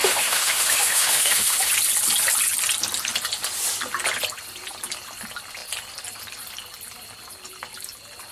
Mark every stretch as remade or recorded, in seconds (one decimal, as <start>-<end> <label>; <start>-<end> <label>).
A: 0.0-1.7 remade; 1.7-8.3 recorded